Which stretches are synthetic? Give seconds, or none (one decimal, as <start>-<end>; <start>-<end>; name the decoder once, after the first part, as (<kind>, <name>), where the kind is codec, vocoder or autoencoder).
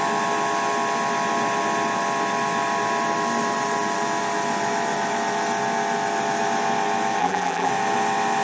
7.2-7.7 (vocoder, BigVGAN v2)